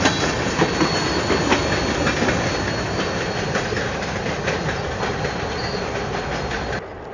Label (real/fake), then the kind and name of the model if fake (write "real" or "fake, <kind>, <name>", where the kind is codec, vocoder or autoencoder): real